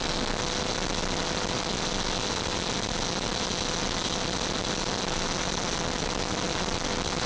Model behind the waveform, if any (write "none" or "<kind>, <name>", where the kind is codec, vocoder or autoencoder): none